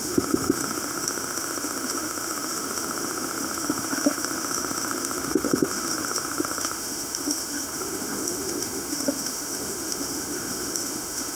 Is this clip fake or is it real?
fake